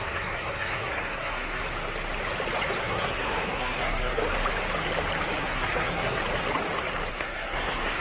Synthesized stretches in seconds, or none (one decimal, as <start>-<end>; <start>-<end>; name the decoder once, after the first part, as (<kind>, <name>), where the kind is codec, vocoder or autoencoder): 0.0-1.6 (codec, SNAC); 2.8-4.2; 5.4-6.2; 7.1-8.0